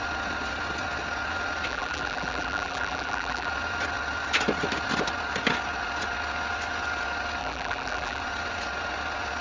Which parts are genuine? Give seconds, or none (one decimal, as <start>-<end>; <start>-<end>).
0.0-1.7; 3.5-7.4; 8.2-9.4